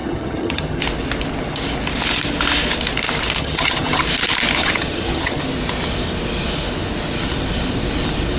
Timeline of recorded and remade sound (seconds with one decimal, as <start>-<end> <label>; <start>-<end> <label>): 0.0-0.8 remade; 0.8-3.4 recorded; 3.4-4.0 remade; 4.0-4.6 recorded; 4.6-5.4 remade; 5.4-8.4 recorded